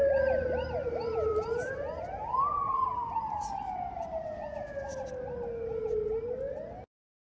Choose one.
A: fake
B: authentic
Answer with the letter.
B